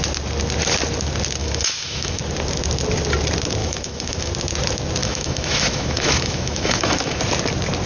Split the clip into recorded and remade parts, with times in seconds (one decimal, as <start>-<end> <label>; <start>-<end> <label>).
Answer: 0.0-1.4 recorded; 1.4-2.2 remade; 2.2-3.6 recorded; 3.6-4.3 remade; 4.3-5.0 recorded; 5.0-7.2 remade; 7.2-7.9 recorded